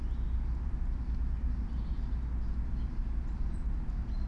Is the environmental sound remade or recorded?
recorded